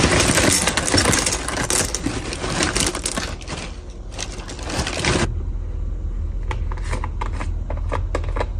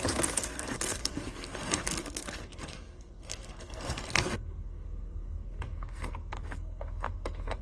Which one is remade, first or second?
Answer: second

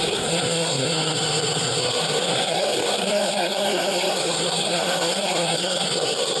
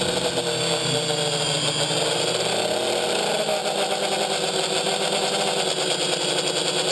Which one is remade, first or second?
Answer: first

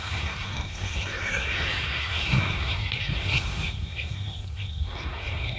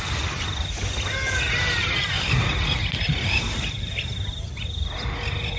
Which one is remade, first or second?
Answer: first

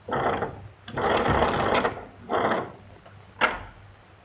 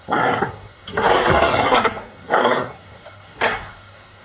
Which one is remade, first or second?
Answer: second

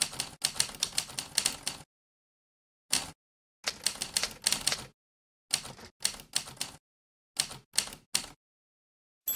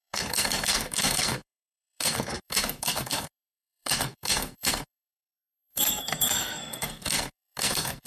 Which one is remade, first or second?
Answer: second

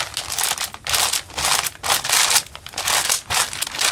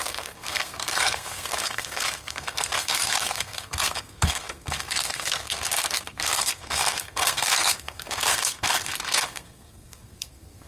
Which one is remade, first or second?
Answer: second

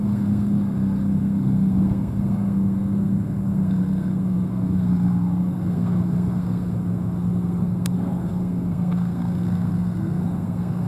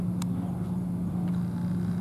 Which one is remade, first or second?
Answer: first